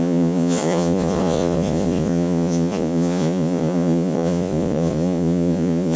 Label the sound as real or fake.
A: fake